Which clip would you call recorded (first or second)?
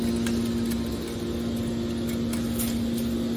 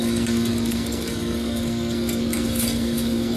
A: first